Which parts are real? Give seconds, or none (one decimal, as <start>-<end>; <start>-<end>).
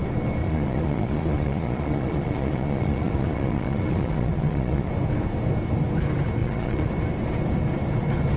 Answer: 0.0-0.4; 4.9-6.4; 6.9-8.4